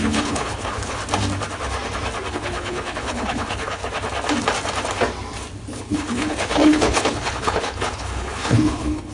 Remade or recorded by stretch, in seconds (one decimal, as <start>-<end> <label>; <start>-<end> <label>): 0.0-1.0 remade; 1.0-2.3 recorded; 2.3-3.8 remade; 3.8-5.8 recorded; 5.8-9.1 remade